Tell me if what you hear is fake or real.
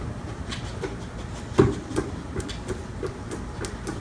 real